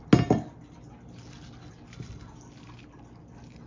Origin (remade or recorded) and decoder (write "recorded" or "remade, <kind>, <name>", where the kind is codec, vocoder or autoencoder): recorded